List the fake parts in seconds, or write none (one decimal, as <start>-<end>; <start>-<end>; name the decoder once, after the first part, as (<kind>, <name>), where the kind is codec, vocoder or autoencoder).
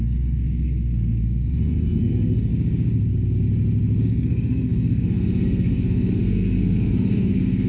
0.0-2.5 (codec, SNAC); 4.0-7.7